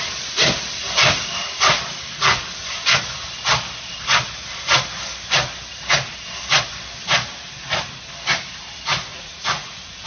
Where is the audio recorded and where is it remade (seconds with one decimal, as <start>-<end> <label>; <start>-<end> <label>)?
0.0-9.1 recorded; 9.1-10.1 remade

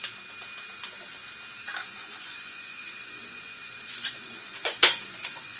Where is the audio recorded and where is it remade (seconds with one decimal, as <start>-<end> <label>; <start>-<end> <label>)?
0.0-1.8 recorded; 1.8-5.6 remade

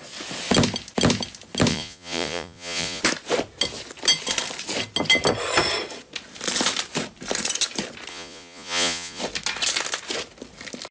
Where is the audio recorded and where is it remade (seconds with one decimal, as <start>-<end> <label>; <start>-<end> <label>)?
0.0-1.7 recorded; 1.7-3.0 remade; 3.0-8.1 recorded; 8.1-9.2 remade; 9.2-10.9 recorded

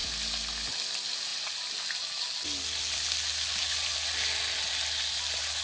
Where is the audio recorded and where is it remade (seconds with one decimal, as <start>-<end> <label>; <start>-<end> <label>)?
0.0-5.6 recorded